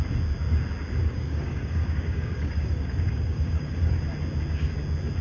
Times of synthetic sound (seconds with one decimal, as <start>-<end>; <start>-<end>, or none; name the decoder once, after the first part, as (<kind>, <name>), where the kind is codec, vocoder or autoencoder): 1.0-4.0 (codec, DAC)

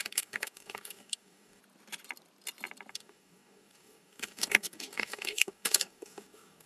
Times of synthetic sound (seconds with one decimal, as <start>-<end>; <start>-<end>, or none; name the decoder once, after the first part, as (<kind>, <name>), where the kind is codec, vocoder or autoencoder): 0.0-1.6 (codec, DAC); 2.9-6.7

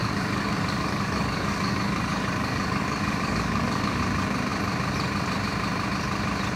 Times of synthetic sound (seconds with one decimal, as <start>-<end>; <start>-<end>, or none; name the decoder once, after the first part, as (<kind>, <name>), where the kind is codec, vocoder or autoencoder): 0.0-4.0 (codec, DAC)

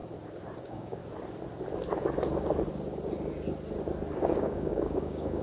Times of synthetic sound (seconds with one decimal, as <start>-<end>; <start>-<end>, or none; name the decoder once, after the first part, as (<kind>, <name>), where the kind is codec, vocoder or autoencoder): 0.6-1.0 (codec, DAC); 4.2-5.4

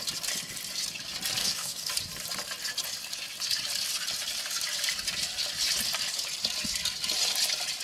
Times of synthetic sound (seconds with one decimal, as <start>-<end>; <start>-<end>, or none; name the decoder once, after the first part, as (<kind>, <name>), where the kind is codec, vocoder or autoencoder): 1.4-1.9 (codec, DAC)

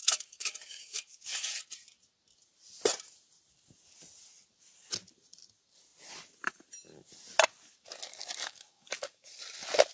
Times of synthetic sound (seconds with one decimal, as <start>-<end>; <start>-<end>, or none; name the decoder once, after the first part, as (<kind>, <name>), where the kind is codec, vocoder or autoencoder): 0.0-1.6 (codec, DAC); 8.1-9.3

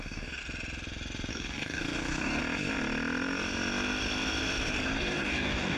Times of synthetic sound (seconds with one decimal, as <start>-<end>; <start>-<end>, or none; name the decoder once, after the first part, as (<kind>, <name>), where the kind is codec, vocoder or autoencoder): 0.0-0.4 (codec, DAC); 1.3-2.4; 5.0-5.8

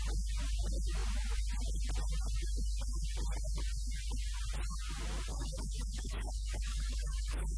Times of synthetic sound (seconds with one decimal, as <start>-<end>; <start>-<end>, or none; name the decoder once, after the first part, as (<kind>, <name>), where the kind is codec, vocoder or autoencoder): 5.3-7.6 (codec, DAC)